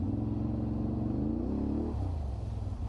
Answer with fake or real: real